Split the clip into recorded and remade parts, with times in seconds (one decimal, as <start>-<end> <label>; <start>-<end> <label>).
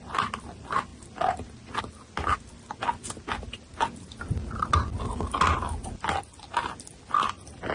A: 0.0-7.7 recorded